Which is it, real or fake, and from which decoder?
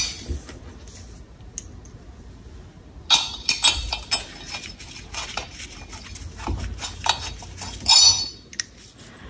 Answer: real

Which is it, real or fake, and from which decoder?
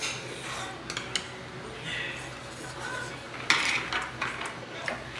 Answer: real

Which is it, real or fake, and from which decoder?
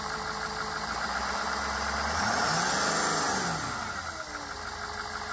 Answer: real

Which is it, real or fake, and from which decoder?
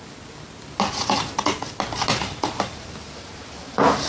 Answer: real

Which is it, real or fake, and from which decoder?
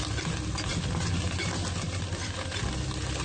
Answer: real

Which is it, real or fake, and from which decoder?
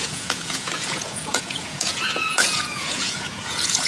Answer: fake, vocoder, Vocos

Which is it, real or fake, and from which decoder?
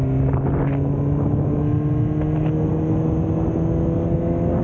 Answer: real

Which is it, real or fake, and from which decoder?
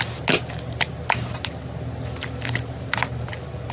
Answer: real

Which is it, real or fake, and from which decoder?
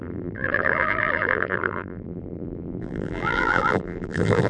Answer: fake, vocoder, BigVGAN v2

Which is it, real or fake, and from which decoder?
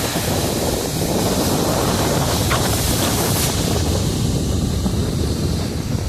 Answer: fake, vocoder, BigVGAN v2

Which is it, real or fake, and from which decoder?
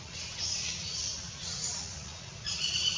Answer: fake, vocoder, Vocos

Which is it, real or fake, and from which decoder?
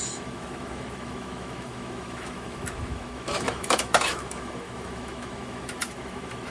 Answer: fake, autoencoder, DAC-VAE